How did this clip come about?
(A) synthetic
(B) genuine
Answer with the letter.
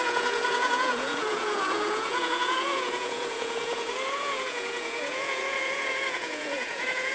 A